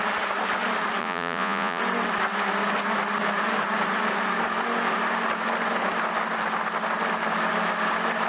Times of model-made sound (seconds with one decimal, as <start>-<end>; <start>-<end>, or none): 1.0-1.8

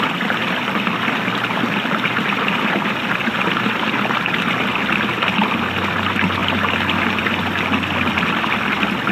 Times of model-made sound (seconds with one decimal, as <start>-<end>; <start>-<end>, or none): none

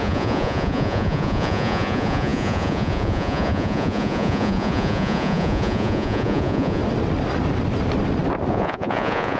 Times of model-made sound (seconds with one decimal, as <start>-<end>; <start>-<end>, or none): 0.0-6.8; 8.5-9.4

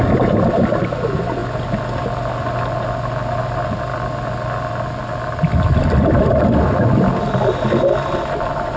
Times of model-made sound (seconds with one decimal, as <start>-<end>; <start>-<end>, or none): none

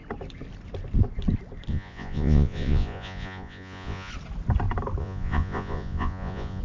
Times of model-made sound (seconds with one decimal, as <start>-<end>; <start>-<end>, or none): 1.7-4.1; 5.0-6.6

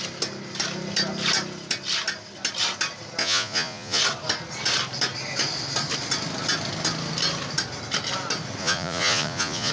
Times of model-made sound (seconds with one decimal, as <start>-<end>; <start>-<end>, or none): 3.2-4.0; 8.6-9.7

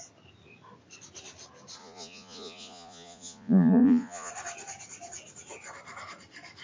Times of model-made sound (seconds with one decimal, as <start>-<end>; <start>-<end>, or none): 1.8-4.3